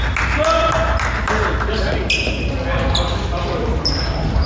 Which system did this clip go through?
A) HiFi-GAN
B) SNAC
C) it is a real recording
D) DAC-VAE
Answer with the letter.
C